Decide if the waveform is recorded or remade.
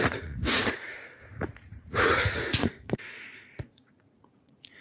remade